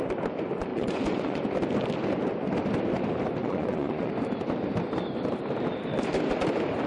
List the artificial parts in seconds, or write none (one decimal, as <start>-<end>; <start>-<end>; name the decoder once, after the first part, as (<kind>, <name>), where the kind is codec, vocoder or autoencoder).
0.7-1.4 (vocoder, Vocos); 3.4-4.1